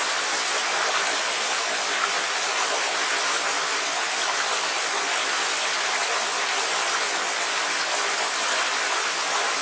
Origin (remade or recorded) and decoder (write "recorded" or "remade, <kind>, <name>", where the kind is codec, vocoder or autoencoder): recorded